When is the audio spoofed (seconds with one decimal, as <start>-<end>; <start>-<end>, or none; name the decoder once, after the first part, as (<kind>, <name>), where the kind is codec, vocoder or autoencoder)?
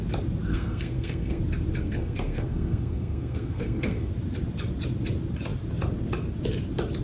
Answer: 0.5-1.4 (codec, SNAC); 1.8-4.1